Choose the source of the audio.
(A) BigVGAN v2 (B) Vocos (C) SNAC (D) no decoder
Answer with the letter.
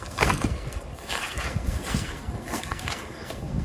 C